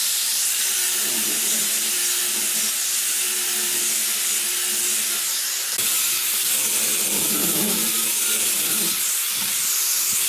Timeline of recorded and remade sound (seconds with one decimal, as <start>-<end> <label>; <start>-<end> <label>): 0.0-2.2 remade; 2.2-7.3 recorded; 7.3-8.0 remade; 8.0-9.1 recorded; 9.1-10.3 remade